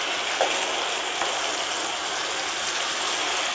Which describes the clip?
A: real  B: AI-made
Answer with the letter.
A